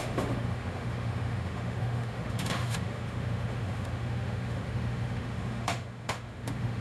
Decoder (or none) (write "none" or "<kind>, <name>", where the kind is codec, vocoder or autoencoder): autoencoder, DAC-VAE